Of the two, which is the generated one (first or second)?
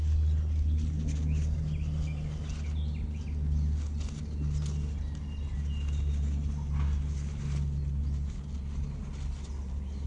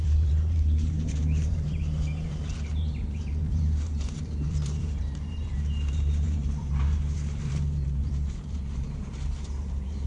second